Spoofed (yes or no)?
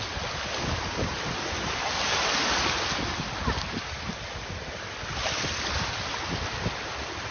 no